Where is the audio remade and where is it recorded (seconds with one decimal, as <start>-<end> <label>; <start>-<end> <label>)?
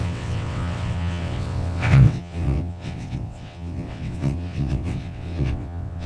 0.0-6.1 remade